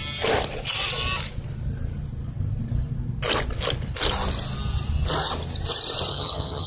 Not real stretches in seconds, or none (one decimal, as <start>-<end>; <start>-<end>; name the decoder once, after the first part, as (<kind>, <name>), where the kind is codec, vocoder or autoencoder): 6.1-6.7 (vocoder, HiFi-GAN)